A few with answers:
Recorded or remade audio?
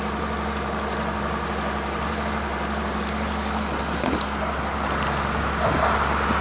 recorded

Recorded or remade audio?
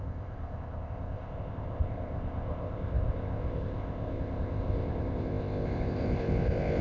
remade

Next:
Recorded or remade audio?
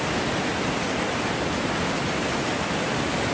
recorded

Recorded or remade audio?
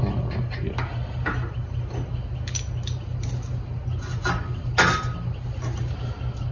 recorded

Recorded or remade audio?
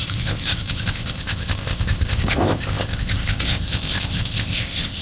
remade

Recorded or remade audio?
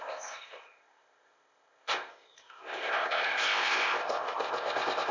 remade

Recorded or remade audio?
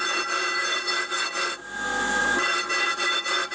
recorded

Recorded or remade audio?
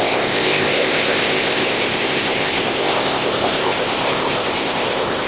remade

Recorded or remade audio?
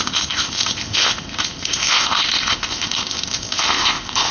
remade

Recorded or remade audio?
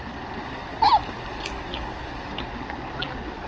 recorded